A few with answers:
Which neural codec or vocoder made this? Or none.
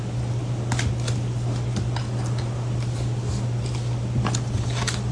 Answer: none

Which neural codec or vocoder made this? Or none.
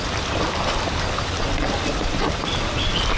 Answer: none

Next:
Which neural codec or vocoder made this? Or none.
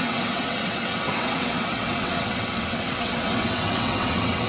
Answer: vocoder, WaveNeXt